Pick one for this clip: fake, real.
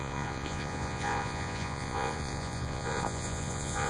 fake